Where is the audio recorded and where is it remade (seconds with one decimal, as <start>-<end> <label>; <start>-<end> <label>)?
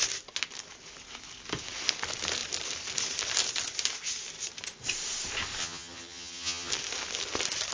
0.0-5.6 recorded; 5.6-6.7 remade; 6.7-7.7 recorded